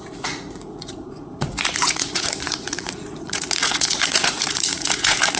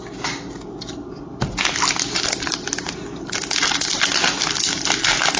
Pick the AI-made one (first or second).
first